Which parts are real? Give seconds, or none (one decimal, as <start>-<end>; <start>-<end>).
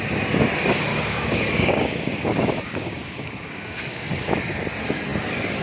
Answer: 0.0-0.9; 4.3-5.6